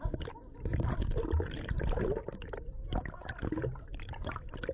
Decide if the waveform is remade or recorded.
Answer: remade